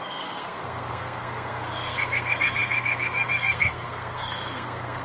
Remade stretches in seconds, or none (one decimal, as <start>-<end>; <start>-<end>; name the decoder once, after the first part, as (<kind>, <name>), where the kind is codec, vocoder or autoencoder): 0.0-5.0 (codec, SNAC)